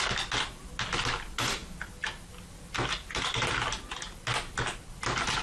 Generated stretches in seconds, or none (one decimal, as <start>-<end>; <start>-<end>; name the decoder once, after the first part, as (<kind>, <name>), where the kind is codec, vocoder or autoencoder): none